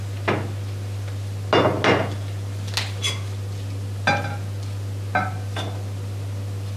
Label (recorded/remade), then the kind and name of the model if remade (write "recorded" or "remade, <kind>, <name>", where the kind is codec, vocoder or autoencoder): recorded